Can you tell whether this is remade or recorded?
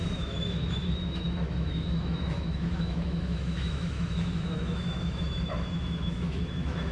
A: remade